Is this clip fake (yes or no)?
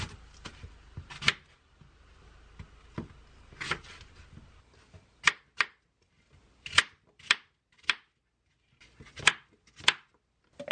no